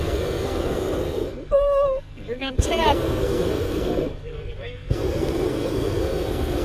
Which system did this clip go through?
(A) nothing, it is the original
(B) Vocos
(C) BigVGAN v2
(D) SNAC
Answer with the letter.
D